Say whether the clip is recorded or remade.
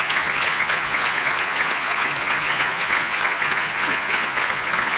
remade